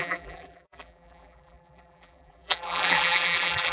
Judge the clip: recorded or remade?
remade